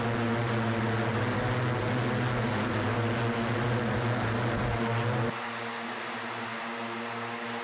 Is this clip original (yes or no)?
yes